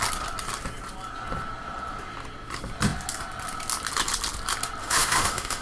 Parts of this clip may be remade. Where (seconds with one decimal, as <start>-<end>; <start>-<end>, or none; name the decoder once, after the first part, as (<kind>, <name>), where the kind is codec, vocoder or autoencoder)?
4.8-5.6 (autoencoder, DAC-VAE)